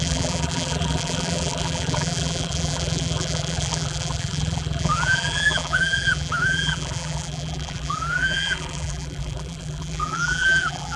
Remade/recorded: remade